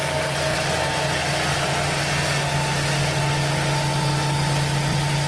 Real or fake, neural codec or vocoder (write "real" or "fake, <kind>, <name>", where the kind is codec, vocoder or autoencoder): real